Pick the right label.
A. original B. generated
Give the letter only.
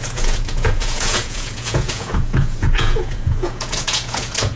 B